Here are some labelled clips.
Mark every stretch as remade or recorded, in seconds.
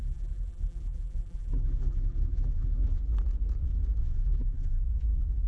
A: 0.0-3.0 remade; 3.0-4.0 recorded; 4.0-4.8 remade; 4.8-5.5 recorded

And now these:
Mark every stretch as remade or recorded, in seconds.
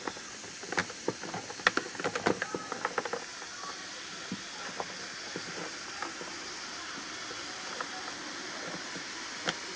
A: 0.0-9.8 recorded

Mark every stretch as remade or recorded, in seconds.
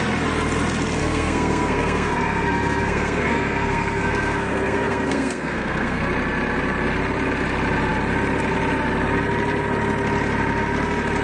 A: 0.0-1.0 recorded; 1.0-6.0 remade; 6.0-11.2 recorded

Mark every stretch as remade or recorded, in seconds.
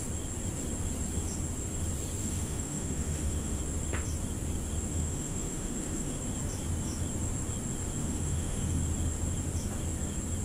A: 0.0-2.2 recorded; 2.2-3.6 remade; 3.6-4.9 recorded; 4.9-6.2 remade; 6.2-8.0 recorded; 8.0-8.8 remade; 8.8-10.4 recorded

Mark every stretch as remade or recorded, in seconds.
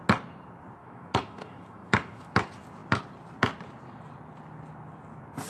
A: 0.0-0.8 recorded; 0.8-2.3 remade; 2.3-5.5 recorded